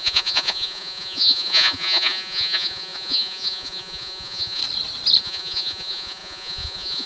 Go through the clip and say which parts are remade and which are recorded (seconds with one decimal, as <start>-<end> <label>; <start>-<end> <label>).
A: 0.0-4.6 remade; 4.6-5.2 recorded; 5.2-7.1 remade